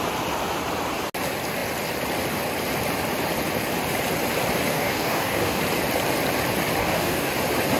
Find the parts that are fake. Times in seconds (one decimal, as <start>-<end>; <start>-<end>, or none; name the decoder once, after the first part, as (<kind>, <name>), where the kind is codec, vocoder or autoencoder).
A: 4.7-5.6 (codec, DAC); 6.8-7.3